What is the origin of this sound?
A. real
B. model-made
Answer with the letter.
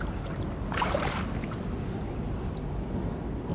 A